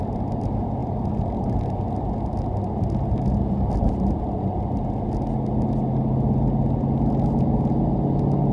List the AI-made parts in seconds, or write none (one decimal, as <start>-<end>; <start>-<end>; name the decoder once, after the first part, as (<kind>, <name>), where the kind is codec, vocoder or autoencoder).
0.8-1.5 (vocoder, BigVGAN v2)